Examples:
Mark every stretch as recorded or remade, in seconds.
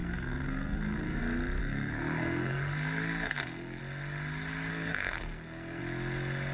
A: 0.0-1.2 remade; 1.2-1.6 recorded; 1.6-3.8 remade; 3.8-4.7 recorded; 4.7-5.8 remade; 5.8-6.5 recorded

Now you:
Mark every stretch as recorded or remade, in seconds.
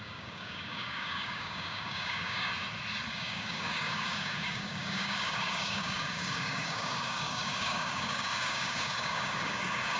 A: 0.0-2.5 remade; 2.5-3.1 recorded; 3.1-10.0 remade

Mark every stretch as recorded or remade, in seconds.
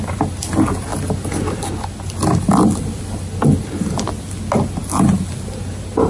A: 0.0-6.1 recorded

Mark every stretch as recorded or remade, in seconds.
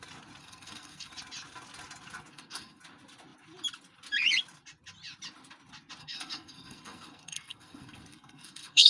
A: 0.0-0.4 recorded; 0.4-1.1 remade; 1.1-2.3 recorded; 2.3-2.8 remade; 2.8-6.0 recorded; 6.0-8.9 remade